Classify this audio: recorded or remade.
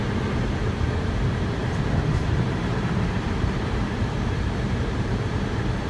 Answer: remade